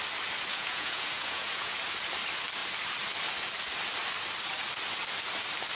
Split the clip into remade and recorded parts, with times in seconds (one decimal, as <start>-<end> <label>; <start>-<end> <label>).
0.0-0.5 recorded; 0.5-1.7 remade; 1.7-5.7 recorded